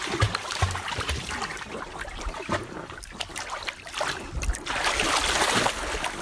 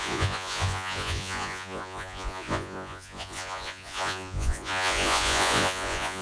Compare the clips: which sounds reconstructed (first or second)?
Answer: second